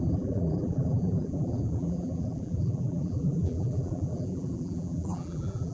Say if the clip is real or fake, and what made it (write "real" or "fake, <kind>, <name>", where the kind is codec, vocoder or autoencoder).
fake, vocoder, BigVGAN v2